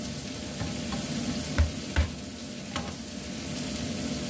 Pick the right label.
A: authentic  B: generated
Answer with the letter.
A